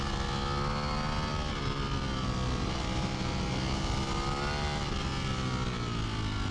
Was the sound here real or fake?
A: real